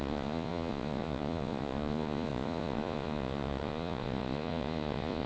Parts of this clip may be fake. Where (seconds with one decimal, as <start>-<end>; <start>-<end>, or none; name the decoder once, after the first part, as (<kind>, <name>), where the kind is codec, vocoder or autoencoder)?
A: 0.0-5.3 (vocoder, Vocos)